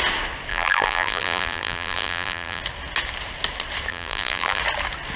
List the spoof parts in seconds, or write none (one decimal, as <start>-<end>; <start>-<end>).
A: 0.5-2.6; 3.9-4.6